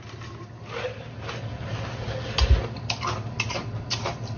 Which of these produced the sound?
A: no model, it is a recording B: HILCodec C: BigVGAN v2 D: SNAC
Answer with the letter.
A